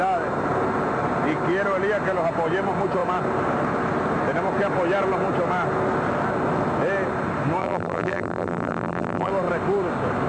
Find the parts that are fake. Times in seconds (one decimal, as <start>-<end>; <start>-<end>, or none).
7.6-9.3